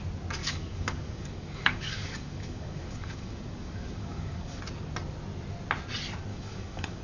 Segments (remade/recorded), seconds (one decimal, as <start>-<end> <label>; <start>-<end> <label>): 0.0-0.4 recorded; 0.4-4.6 remade; 4.6-6.3 recorded; 6.3-7.0 remade